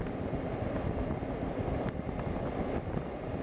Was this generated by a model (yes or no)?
no